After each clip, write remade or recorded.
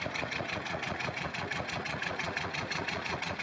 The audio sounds remade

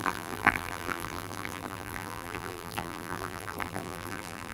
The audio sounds remade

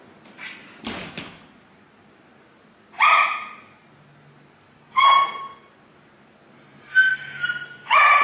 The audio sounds recorded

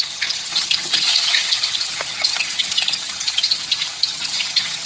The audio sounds remade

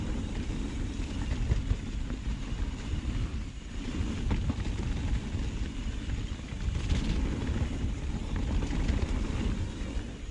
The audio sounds recorded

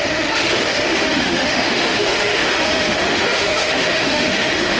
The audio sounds remade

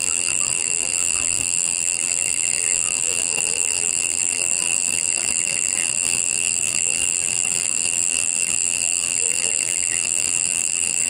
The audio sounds remade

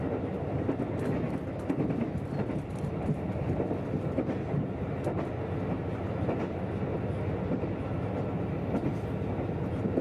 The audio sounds recorded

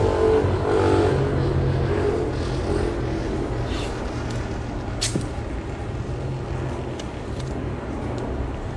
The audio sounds recorded